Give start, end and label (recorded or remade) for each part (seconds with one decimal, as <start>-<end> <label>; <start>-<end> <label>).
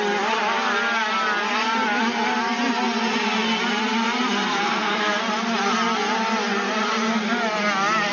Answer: 0.0-4.6 recorded; 4.6-5.2 remade; 5.2-8.1 recorded